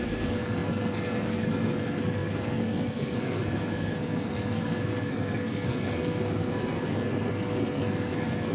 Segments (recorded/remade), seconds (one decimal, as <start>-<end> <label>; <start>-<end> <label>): 0.0-8.5 remade